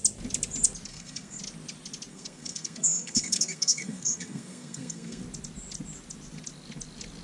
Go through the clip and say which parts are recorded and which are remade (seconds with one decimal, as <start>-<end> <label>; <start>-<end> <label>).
0.0-0.9 recorded; 0.9-1.4 remade; 1.4-2.1 recorded; 2.1-5.2 remade; 5.2-7.2 recorded